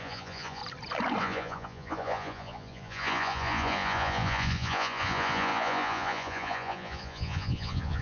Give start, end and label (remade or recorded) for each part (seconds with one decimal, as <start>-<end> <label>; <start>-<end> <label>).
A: 0.0-0.6 remade; 0.6-1.2 recorded; 1.2-8.0 remade